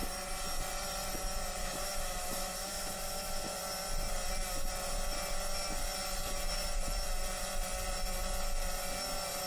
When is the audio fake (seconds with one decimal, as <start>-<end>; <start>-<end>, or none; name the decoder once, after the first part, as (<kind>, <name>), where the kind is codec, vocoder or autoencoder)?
1.6-3.6 (autoencoder, DAC-VAE)